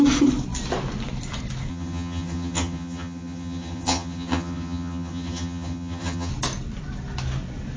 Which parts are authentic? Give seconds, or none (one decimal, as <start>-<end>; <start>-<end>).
0.0-1.7; 6.3-7.8